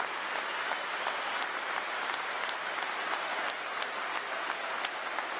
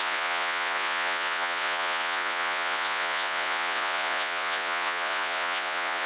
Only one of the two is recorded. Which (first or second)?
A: first